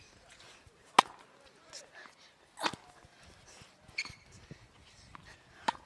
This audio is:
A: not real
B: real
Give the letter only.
B